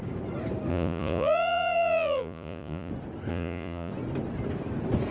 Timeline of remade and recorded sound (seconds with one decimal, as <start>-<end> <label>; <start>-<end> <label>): 0.0-0.7 recorded; 0.7-2.9 remade; 2.9-3.3 recorded; 3.3-3.9 remade; 3.9-5.1 recorded

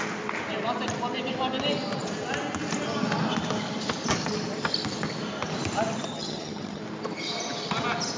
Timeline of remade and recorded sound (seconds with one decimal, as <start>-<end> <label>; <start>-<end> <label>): 0.0-6.1 recorded; 6.1-6.8 remade; 6.8-8.2 recorded

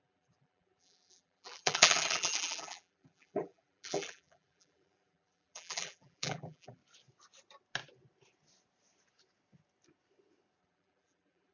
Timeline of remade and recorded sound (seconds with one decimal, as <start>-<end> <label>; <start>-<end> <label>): 0.0-6.8 remade; 6.8-10.6 recorded; 10.6-11.5 remade

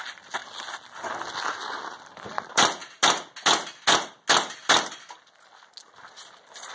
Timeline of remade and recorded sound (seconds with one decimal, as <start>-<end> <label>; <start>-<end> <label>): 0.0-6.7 recorded

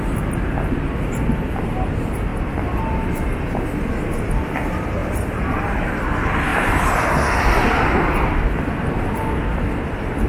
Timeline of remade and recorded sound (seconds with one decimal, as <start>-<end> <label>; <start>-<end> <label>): 0.0-2.3 recorded; 2.3-3.4 remade; 3.4-5.0 recorded; 5.0-5.6 remade; 5.6-6.5 recorded; 6.5-7.1 remade; 7.1-10.3 recorded

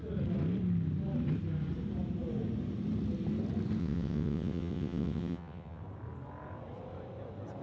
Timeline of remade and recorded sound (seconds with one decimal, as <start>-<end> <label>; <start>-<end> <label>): 0.0-3.8 recorded; 3.8-5.8 remade; 5.8-7.6 recorded

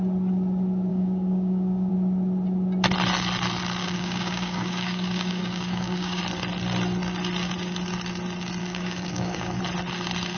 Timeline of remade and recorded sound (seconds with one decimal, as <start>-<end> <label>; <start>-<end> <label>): 0.0-0.9 recorded; 0.9-1.9 remade; 1.9-3.8 recorded; 3.8-6.2 remade; 6.2-8.6 recorded; 8.6-9.6 remade; 9.6-10.4 recorded